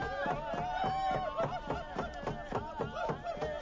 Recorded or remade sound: recorded